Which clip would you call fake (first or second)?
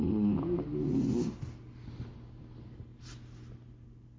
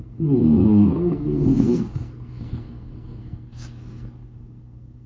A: second